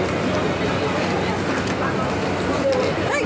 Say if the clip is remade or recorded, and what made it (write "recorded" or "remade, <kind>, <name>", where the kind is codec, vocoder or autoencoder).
recorded